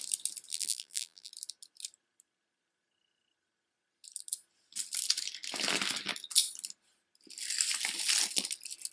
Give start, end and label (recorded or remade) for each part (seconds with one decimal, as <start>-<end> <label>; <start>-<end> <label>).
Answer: 0.0-0.5 recorded; 0.5-1.3 remade; 1.3-8.9 recorded